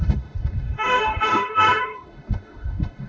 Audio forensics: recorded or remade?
remade